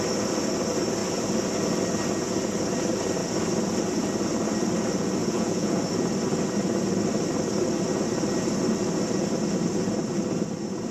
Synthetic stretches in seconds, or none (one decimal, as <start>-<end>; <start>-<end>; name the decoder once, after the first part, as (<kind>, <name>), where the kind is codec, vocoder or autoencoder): 5.2-5.8 (vocoder, Vocos)